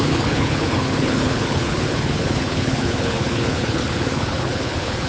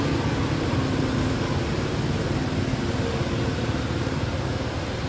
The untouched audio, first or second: second